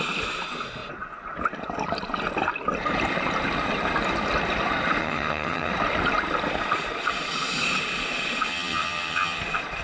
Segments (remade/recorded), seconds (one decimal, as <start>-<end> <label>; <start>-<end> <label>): 0.0-5.0 recorded; 5.0-5.7 remade; 5.7-8.5 recorded; 8.5-9.4 remade; 9.4-9.8 recorded